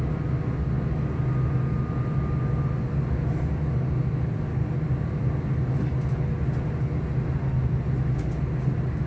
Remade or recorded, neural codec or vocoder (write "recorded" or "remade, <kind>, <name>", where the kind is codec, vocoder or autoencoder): recorded